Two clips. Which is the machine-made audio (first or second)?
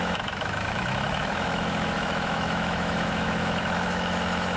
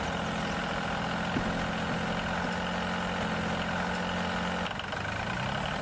first